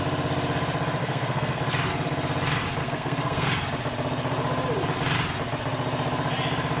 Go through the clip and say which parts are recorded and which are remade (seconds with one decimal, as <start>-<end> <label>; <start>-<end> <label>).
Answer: 0.0-1.0 recorded; 1.0-1.6 remade; 1.6-2.8 recorded; 2.8-3.5 remade; 3.5-6.8 recorded